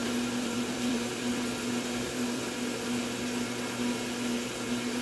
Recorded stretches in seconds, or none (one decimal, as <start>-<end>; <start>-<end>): 2.9-5.0

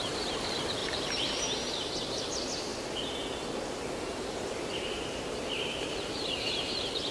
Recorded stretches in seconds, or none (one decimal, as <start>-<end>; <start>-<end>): 2.7-4.0

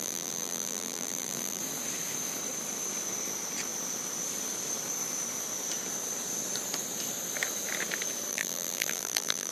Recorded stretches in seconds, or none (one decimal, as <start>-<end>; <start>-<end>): 1.6-8.3